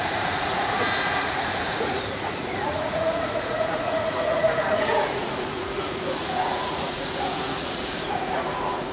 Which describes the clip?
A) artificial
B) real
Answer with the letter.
A